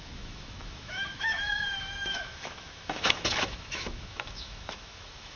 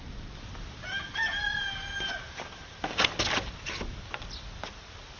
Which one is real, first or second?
second